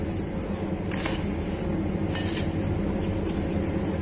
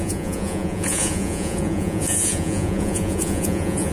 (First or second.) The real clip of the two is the first